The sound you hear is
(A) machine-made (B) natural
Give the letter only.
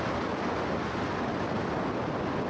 B